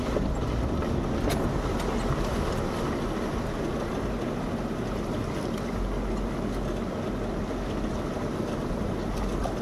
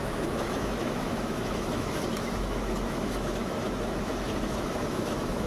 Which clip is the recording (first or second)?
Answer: first